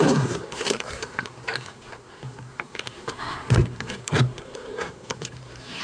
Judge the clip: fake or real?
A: fake